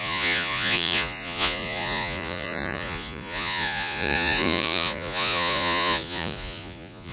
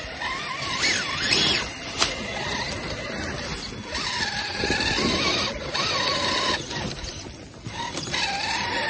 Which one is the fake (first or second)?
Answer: first